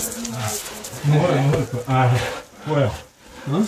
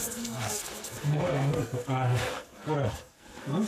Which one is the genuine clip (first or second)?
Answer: first